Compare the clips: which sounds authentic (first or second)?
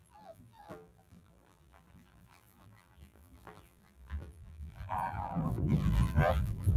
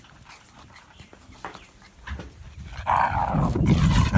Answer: second